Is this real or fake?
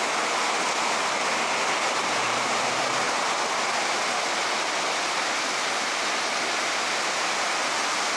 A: real